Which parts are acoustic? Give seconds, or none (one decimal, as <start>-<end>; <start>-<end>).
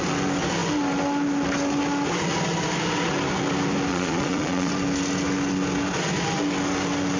0.0-3.9; 4.7-7.2